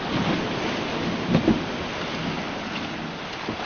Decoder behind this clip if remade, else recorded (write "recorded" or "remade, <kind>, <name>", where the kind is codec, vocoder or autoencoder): recorded